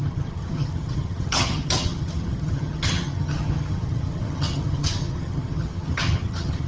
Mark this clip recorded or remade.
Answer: remade